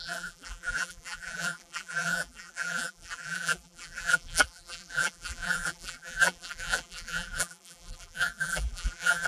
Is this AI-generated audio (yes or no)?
yes